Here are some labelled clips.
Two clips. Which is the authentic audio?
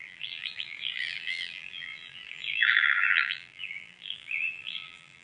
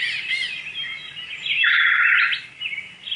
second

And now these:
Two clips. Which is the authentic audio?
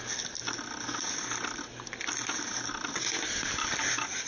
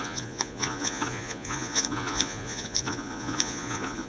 first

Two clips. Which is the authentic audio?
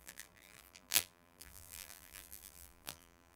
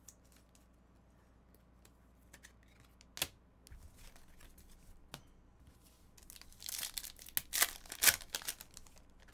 second